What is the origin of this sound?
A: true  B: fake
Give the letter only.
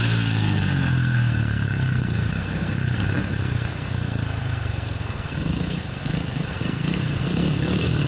B